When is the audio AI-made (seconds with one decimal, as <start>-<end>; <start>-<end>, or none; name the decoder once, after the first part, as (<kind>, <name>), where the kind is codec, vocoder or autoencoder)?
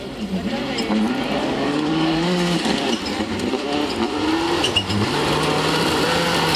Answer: 1.4-2.9 (codec, DAC)